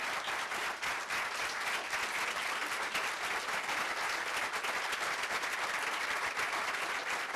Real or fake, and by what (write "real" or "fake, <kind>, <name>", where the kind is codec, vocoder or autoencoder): real